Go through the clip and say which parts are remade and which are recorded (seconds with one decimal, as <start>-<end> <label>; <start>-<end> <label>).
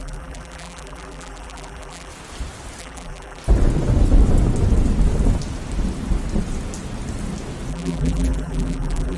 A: 0.0-2.1 remade; 2.1-2.8 recorded; 2.8-3.4 remade; 3.4-7.7 recorded; 7.7-9.2 remade